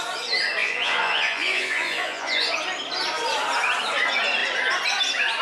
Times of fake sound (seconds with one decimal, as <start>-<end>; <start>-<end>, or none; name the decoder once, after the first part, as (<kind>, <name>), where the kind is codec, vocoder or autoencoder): 0.6-2.5 (vocoder, Vocos)